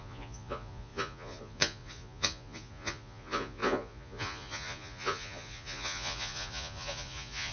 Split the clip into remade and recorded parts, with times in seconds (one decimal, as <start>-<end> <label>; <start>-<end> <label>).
0.0-7.5 remade